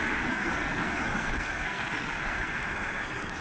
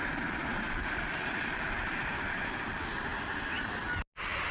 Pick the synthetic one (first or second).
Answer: first